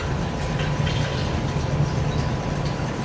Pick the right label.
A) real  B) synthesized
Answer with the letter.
A